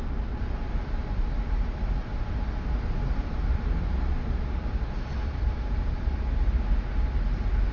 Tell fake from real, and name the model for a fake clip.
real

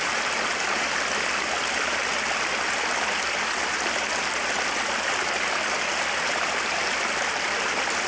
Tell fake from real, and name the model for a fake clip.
real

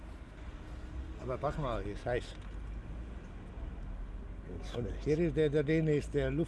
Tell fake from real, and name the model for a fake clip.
real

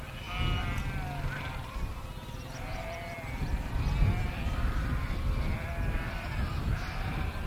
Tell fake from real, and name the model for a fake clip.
real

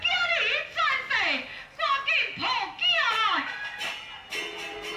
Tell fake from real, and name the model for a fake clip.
real